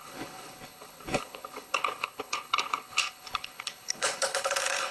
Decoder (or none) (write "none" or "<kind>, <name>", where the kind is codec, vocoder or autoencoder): codec, HILCodec